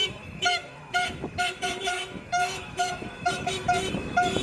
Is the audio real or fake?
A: fake